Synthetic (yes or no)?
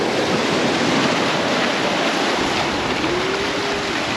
no